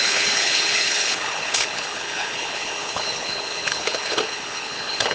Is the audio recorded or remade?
remade